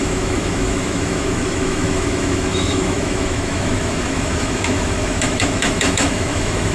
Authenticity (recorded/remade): remade